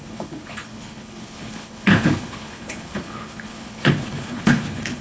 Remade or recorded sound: remade